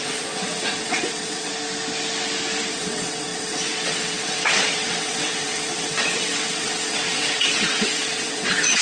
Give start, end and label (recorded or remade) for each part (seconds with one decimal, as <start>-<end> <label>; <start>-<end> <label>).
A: 0.0-1.5 remade; 1.5-2.7 recorded; 2.7-8.8 remade